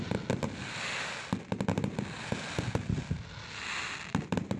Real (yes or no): yes